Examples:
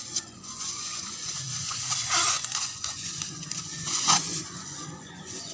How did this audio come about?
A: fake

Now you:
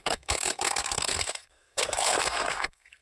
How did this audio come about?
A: fake